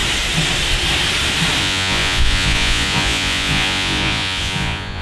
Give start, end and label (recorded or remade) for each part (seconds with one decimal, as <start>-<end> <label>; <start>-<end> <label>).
0.0-1.6 recorded; 1.6-5.0 remade